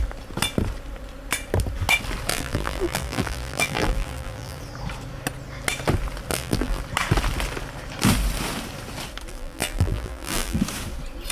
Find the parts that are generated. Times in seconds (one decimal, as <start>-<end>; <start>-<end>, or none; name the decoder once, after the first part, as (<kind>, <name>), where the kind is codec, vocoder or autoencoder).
2.3-4.6 (vocoder, BigVGAN v2); 6.3-6.8; 9.3-10.6